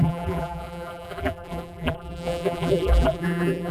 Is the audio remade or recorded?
remade